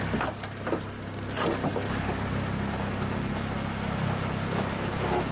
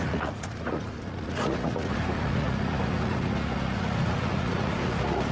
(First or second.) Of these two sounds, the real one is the first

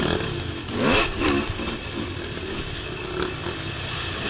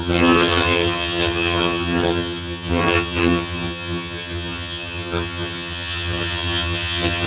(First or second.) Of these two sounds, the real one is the first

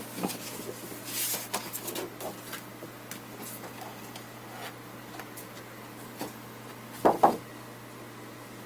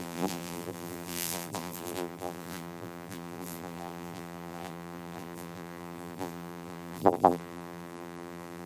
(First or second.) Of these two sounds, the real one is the first